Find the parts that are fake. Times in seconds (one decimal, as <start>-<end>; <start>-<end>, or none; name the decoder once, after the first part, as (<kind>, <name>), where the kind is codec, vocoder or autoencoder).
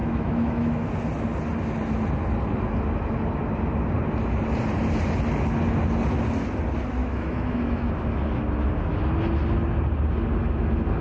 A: 0.0-0.9 (autoencoder, DAC-VAE); 7.0-7.9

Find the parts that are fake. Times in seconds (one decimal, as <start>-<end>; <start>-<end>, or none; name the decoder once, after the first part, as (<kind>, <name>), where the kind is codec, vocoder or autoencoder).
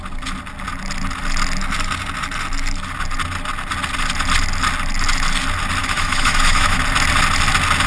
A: 5.8-6.8 (autoencoder, DAC-VAE)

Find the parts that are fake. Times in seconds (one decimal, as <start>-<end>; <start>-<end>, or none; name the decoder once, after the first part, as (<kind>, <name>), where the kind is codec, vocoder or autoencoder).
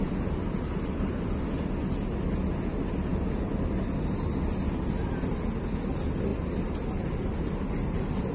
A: none